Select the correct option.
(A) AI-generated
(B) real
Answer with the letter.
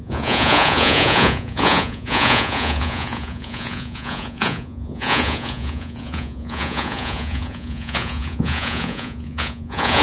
A